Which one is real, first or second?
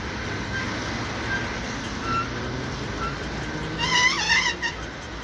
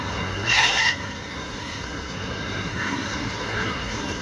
first